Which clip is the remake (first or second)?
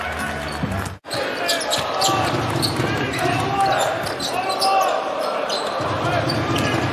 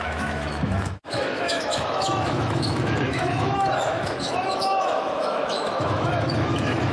second